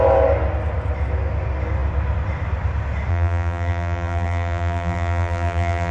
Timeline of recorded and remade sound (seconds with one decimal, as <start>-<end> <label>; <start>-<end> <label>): 0.0-3.1 recorded; 3.1-5.9 remade